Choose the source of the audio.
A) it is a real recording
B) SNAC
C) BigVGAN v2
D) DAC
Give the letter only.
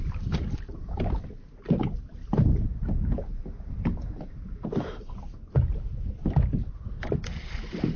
A